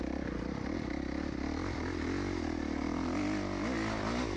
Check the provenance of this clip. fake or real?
real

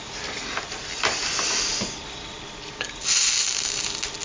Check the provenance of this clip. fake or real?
real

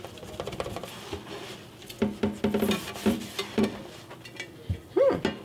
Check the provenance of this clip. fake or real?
real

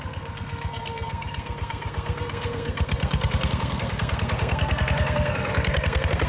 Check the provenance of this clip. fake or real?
fake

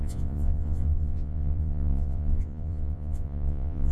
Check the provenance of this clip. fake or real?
fake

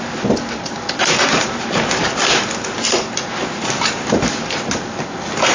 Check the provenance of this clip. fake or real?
real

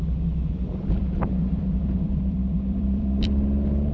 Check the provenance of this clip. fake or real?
fake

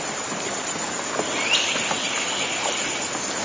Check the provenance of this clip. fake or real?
real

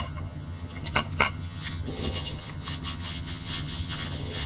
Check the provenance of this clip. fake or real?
fake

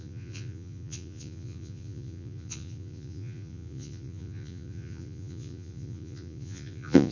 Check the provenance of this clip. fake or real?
fake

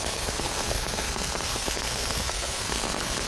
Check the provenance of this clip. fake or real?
fake